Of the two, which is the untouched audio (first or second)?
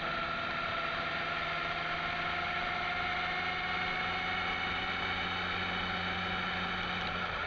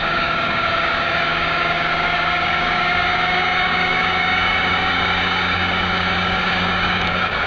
first